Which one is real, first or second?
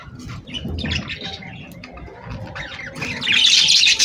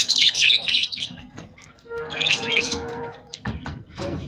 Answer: first